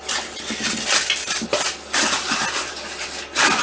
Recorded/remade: recorded